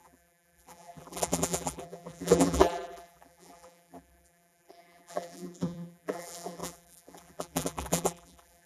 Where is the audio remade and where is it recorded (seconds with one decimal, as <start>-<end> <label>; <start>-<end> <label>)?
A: 0.0-8.7 remade